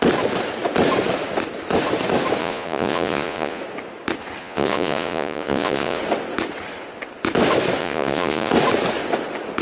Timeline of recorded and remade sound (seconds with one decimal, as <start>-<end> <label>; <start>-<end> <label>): 0.0-2.4 recorded; 2.4-3.6 remade; 3.6-4.4 recorded; 4.4-6.0 remade; 6.0-7.8 recorded; 7.8-8.5 remade; 8.5-9.6 recorded